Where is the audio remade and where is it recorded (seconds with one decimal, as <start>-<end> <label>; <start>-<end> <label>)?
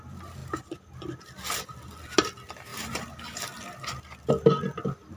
0.0-0.4 recorded; 0.4-1.2 remade; 1.2-2.7 recorded; 2.7-4.3 remade; 4.3-5.2 recorded